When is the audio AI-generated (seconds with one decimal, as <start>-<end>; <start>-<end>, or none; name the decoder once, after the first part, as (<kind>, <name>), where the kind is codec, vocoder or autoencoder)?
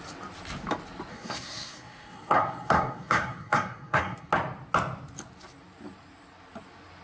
1.1-4.3 (codec, SNAC)